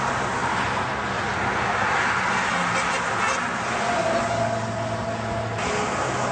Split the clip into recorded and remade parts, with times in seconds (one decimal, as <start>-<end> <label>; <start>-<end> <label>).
0.0-6.3 recorded